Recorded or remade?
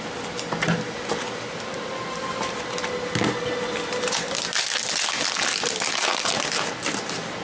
recorded